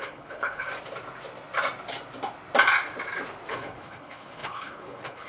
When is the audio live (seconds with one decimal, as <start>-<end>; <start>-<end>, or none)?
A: 0.7-3.5